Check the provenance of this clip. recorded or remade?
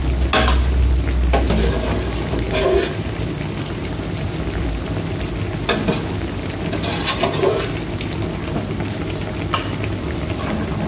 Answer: recorded